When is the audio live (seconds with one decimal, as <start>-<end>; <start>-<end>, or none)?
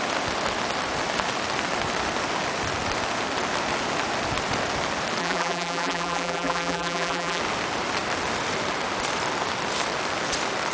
0.0-5.2; 7.4-10.7